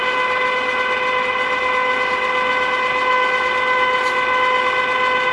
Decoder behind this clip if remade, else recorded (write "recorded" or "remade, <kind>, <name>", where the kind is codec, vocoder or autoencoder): recorded